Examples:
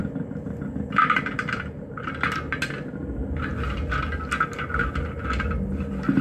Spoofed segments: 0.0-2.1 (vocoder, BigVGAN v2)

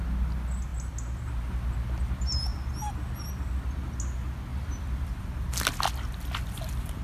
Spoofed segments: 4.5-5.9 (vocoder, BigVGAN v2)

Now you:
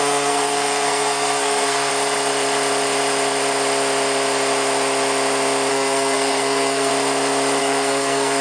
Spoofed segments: 0.0-1.9 (codec, SNAC); 5.7-6.9; 7.6-8.4

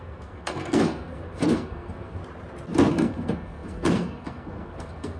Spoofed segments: 0.0-2.2 (codec, SNAC); 2.9-5.2

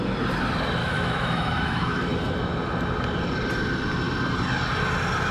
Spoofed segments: 0.8-2.0 (autoencoder, DAC-VAE)

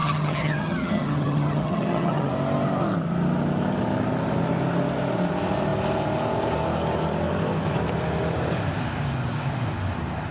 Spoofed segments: 0.0-2.3 (vocoder, HiFi-GAN)